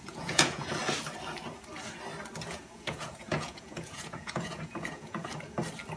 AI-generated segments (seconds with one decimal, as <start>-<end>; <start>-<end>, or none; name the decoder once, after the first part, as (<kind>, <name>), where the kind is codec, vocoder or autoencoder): 0.0-0.8 (vocoder, Vocos); 2.5-5.3